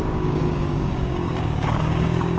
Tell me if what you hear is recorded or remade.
remade